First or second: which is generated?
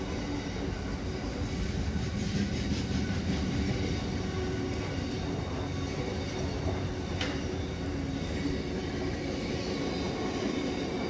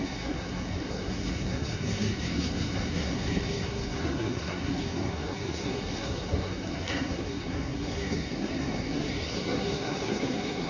second